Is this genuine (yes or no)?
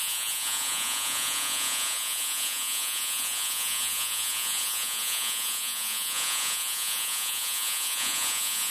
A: no